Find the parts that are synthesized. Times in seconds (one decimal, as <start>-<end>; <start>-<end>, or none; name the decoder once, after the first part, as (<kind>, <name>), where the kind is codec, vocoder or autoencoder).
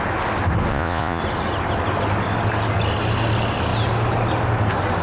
0.7-1.2 (vocoder, Vocos)